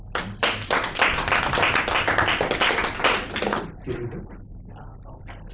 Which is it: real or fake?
real